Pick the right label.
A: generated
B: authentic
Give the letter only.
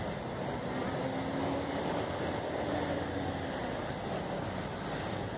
B